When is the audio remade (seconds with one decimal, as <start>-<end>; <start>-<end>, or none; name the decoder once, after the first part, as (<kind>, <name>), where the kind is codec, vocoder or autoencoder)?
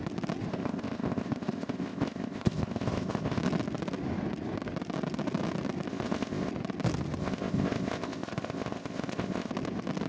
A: 0.5-3.4 (codec, ZipCodec); 5.9-6.5; 7.2-9.5